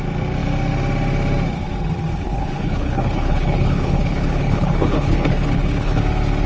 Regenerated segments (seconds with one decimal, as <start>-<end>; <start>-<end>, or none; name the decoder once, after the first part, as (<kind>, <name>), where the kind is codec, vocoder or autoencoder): 2.1-6.0 (codec, HILCodec)